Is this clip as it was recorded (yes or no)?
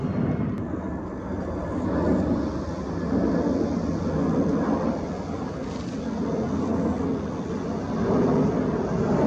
yes